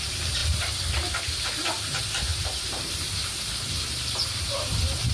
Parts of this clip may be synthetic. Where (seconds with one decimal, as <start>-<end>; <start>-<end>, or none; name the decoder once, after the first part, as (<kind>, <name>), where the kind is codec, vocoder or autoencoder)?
0.0-5.1 (vocoder, BigVGAN v2)